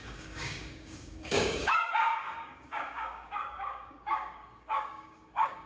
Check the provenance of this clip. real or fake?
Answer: fake